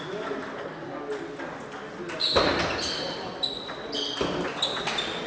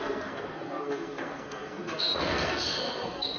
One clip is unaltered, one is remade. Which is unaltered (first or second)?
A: first